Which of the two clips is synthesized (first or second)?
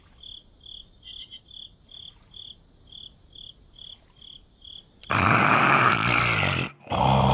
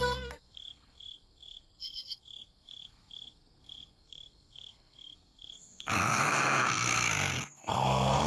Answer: second